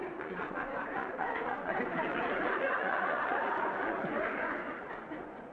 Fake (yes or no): yes